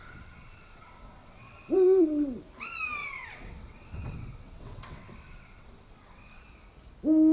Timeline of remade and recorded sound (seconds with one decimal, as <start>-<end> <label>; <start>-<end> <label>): 0.0-2.4 remade; 2.4-3.0 recorded; 3.0-6.4 remade; 6.4-7.3 recorded